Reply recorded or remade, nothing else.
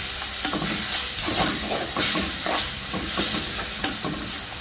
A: recorded